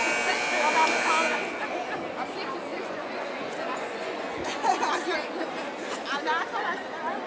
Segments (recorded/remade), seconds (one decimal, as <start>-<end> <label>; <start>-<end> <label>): 0.0-2.7 recorded; 2.7-4.9 remade; 4.9-7.3 recorded